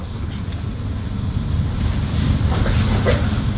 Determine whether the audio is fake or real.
real